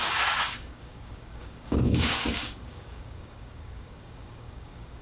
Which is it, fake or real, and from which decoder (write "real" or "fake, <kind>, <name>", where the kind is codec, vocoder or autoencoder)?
fake, codec, DAC